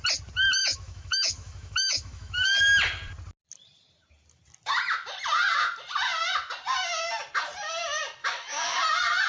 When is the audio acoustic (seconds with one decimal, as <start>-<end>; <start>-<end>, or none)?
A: 0.0-0.6; 2.6-8.2; 8.8-9.3